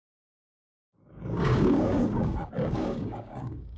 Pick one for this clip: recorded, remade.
remade